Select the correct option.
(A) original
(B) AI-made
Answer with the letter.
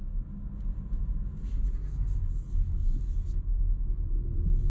A